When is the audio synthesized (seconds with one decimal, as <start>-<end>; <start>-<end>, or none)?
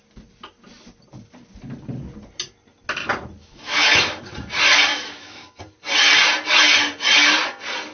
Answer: 3.4-4.2; 4.9-5.6